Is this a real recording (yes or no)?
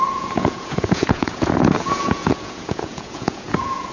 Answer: no